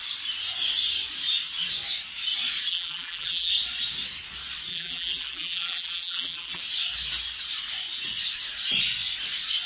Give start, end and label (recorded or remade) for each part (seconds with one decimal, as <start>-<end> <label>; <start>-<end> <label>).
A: 0.0-2.7 recorded; 2.7-3.5 remade; 3.5-4.7 recorded; 4.7-6.6 remade; 6.6-9.7 recorded